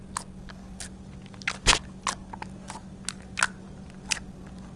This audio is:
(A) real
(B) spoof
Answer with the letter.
A